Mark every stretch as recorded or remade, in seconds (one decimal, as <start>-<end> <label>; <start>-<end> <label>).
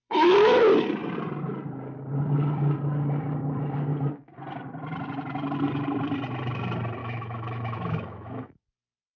0.0-0.6 remade; 0.6-7.0 recorded; 7.0-8.6 remade; 8.6-9.2 recorded